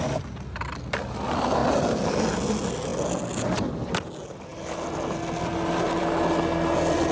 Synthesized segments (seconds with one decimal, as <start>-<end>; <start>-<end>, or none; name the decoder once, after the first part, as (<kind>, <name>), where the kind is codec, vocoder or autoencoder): none